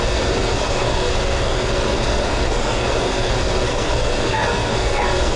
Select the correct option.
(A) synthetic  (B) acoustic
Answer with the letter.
A